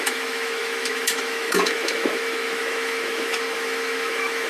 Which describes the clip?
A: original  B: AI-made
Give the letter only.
B